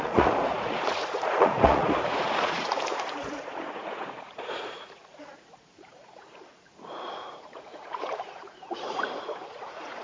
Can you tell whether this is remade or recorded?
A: remade